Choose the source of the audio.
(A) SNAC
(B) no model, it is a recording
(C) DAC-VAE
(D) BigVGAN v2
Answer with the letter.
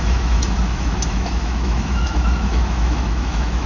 C